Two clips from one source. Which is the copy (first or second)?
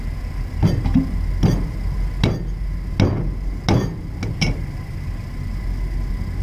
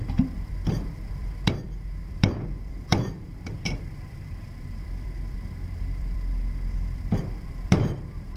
second